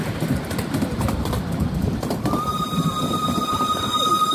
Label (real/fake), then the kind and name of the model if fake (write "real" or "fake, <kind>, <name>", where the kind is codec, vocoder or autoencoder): fake, vocoder, BigVGAN v2